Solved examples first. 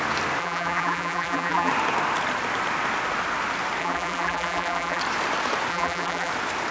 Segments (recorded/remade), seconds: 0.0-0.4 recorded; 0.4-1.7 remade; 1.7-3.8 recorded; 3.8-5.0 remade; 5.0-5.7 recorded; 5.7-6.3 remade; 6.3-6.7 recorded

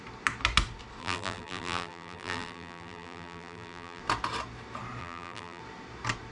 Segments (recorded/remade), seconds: 0.0-1.0 recorded; 1.0-4.0 remade; 4.0-5.0 recorded; 5.0-5.6 remade; 5.6-6.3 recorded

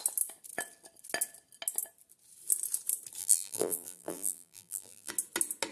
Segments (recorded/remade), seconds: 0.0-3.2 recorded; 3.2-5.1 remade; 5.1-5.7 recorded

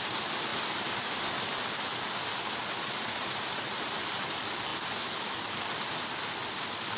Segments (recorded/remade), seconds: 0.0-7.0 recorded

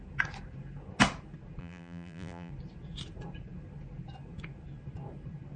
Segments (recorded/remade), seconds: 0.0-1.6 recorded; 1.6-2.5 remade; 2.5-5.6 recorded

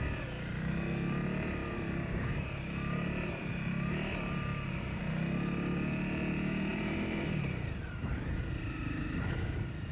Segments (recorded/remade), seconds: 0.0-1.6 recorded; 1.6-3.9 remade; 3.9-6.7 recorded; 6.7-8.8 remade; 8.8-9.9 recorded

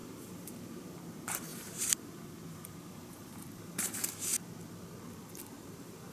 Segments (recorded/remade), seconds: 0.0-4.3 remade; 4.3-5.6 recorded; 5.6-6.1 remade

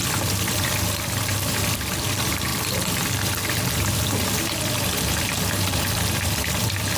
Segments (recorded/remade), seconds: 0.0-0.7 remade; 0.7-1.3 recorded; 1.3-7.0 remade